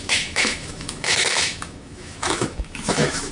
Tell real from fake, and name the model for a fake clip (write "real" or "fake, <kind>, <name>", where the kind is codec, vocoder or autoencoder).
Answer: fake, autoencoder, DAC-VAE